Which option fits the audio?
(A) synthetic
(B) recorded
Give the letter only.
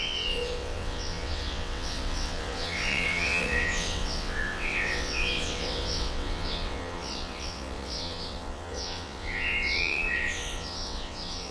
A